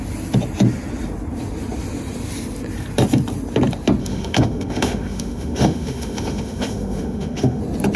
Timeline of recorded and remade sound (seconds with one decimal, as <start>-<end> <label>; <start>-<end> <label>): 0.0-4.0 recorded; 4.0-7.6 remade; 7.6-8.0 recorded